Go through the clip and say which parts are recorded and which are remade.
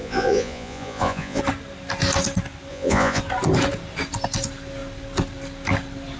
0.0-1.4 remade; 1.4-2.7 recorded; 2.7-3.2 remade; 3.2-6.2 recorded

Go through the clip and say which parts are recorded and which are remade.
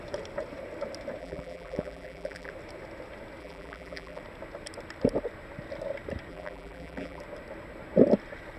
0.0-1.2 recorded; 1.2-2.5 remade; 2.5-3.4 recorded; 3.4-4.2 remade; 4.2-6.3 recorded; 6.3-7.2 remade; 7.2-8.6 recorded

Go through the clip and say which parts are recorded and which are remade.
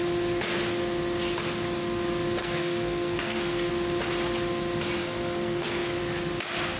0.0-2.4 recorded; 2.4-3.7 remade; 3.7-5.0 recorded; 5.0-6.0 remade; 6.0-6.8 recorded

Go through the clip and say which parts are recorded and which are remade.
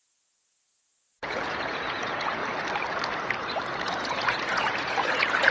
0.0-2.4 remade; 2.4-3.8 recorded; 3.8-5.5 remade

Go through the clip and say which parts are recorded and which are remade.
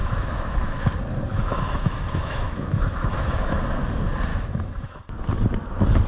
0.0-0.8 remade; 0.8-1.3 recorded; 1.3-3.6 remade; 3.6-4.3 recorded; 4.3-5.0 remade; 5.0-6.1 recorded